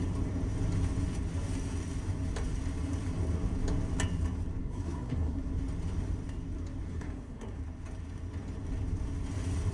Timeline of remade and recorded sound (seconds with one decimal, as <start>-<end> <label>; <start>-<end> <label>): 0.0-4.6 recorded; 4.6-5.5 remade; 5.5-6.9 recorded; 6.9-7.6 remade; 7.6-9.7 recorded